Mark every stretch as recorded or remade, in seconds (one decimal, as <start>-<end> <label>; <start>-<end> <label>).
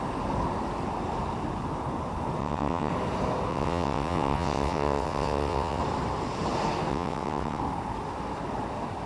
0.0-2.4 recorded; 2.4-2.9 remade; 2.9-3.5 recorded; 3.5-5.8 remade; 5.8-6.9 recorded; 6.9-7.6 remade; 7.6-9.1 recorded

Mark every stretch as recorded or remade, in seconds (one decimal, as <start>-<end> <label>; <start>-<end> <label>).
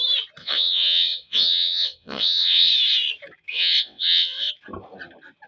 0.0-0.4 recorded; 0.4-2.7 remade; 2.7-3.5 recorded; 3.5-4.5 remade; 4.5-5.5 recorded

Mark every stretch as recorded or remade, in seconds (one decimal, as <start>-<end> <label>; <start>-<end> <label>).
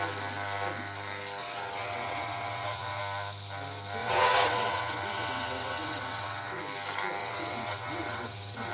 0.0-1.4 recorded; 1.4-3.0 remade; 3.0-4.0 recorded; 4.0-6.6 remade; 6.6-7.2 recorded; 7.2-8.7 remade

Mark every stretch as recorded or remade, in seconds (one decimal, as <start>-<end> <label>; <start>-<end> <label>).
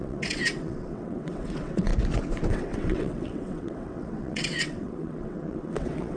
0.0-1.9 remade; 1.9-2.5 recorded; 2.5-6.2 remade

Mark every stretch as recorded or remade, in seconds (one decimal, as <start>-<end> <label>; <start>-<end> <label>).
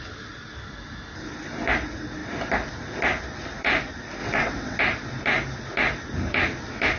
0.0-4.2 recorded; 4.2-4.8 remade; 4.8-7.0 recorded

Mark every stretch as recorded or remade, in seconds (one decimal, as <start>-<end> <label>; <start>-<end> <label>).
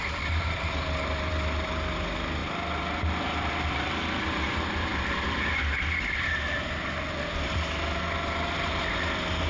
0.0-9.5 recorded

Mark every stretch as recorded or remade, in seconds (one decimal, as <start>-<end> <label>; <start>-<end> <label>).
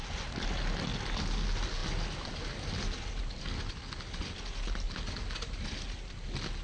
0.0-6.6 recorded